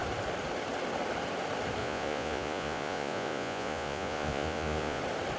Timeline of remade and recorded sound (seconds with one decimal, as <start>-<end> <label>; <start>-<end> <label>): 0.0-1.8 recorded; 1.8-5.0 remade; 5.0-5.4 recorded